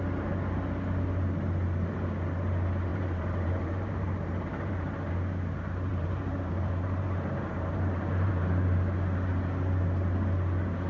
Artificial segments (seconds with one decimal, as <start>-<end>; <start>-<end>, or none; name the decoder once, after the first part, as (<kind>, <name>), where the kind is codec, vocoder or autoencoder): 2.9-5.1 (vocoder, BigVGAN v2); 5.9-8.3